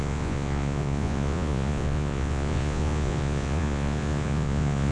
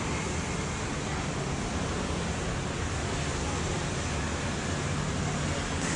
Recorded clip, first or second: second